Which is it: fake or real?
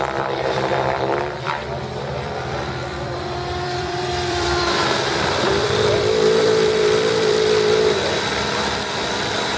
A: fake